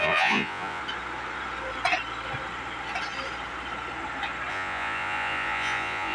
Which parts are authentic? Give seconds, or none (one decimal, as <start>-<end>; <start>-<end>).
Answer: 0.8-4.5